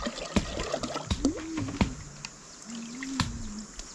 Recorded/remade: recorded